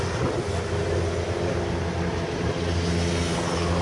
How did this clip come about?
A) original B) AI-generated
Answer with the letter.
A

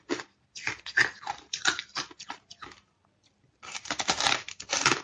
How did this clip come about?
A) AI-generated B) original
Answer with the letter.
A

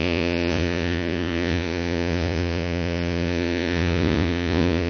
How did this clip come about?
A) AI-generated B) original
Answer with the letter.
A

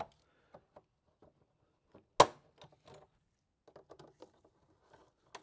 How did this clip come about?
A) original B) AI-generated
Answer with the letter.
A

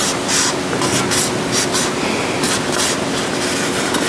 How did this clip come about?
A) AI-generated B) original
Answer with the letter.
B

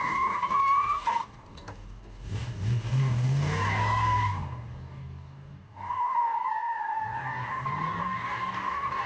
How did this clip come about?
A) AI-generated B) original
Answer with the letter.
A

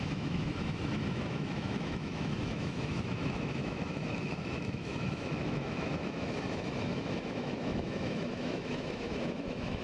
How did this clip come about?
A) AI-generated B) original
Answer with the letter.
A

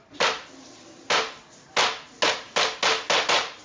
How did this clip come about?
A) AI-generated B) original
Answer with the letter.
B